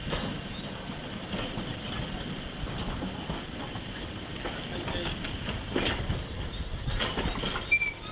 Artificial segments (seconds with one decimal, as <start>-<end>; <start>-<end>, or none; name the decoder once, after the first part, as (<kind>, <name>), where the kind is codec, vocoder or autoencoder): none